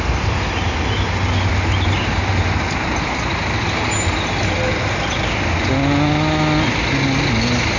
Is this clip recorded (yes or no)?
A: yes